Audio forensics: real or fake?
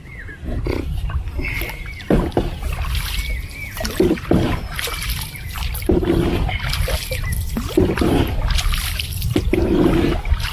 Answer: real